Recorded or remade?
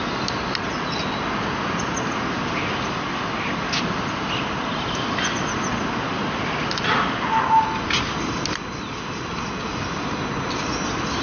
recorded